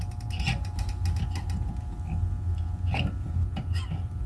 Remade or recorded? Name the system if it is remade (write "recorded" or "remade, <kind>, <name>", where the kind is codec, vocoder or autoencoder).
recorded